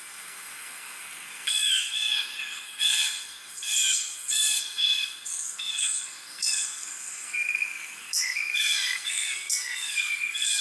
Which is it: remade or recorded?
remade